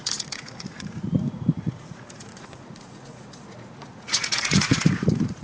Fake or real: fake